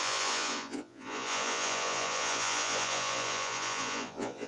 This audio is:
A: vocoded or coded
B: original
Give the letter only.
A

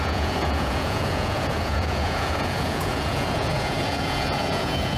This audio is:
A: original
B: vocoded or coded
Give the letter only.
B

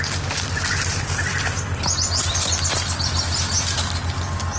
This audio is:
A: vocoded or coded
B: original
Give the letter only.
B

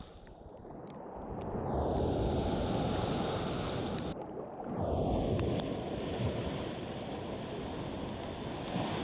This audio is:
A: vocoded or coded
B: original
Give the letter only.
B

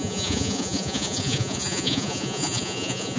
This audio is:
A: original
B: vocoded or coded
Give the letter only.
B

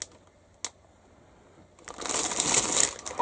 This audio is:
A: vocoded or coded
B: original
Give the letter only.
B